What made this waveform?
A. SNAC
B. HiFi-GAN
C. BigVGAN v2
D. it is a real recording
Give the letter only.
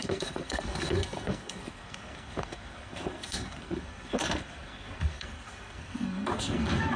A